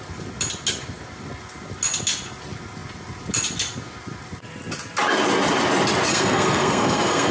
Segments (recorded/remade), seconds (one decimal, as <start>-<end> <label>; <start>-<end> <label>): 0.0-6.1 recorded; 6.1-7.3 remade